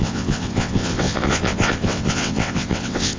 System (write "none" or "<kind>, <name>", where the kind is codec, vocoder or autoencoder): vocoder, WaveNeXt